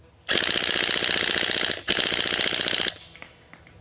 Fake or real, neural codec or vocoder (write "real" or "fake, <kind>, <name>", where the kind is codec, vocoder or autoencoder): real